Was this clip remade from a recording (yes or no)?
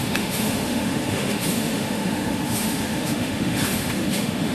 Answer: yes